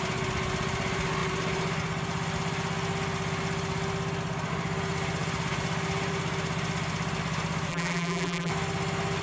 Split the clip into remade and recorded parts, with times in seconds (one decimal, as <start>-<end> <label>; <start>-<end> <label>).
0.0-7.7 recorded; 7.7-8.5 remade; 8.5-9.2 recorded